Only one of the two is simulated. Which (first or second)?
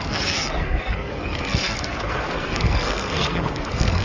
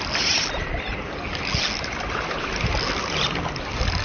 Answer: first